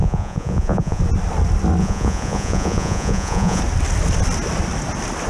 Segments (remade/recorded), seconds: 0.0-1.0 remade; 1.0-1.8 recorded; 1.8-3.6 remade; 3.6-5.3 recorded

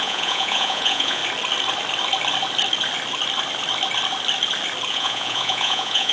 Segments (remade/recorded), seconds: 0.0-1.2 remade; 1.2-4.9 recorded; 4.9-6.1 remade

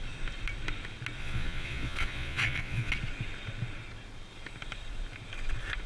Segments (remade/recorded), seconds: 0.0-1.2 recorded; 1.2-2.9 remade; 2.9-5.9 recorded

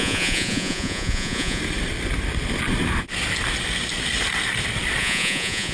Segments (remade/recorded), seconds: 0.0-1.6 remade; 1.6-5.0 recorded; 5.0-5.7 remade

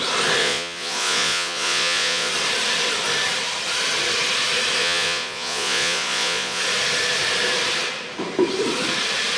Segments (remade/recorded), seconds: 0.0-0.4 recorded; 0.4-2.3 remade; 2.3-4.8 recorded; 4.8-6.6 remade; 6.6-9.4 recorded